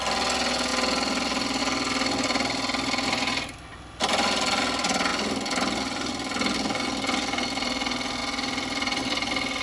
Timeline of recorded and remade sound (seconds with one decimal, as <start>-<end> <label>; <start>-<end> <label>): 0.0-9.6 recorded